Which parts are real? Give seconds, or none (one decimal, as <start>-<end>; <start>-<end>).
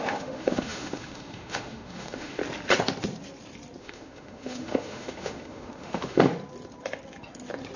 2.4-3.8; 6.3-7.8